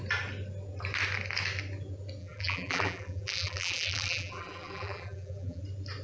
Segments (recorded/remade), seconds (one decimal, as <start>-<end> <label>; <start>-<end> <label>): 0.0-2.2 recorded; 2.2-5.6 remade; 5.6-6.0 recorded